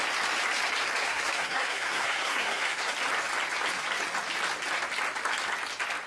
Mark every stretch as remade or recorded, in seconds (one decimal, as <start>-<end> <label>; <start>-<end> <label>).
0.0-1.0 recorded; 1.0-2.9 remade; 2.9-6.1 recorded